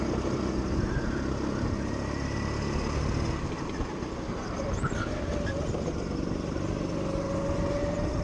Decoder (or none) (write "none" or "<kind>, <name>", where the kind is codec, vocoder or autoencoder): none